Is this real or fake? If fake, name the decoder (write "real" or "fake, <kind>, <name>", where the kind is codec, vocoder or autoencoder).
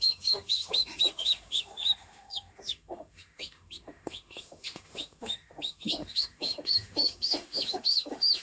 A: fake, autoencoder, DAC-VAE